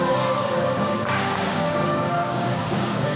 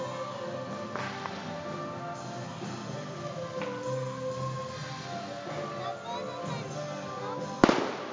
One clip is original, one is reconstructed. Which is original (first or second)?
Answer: second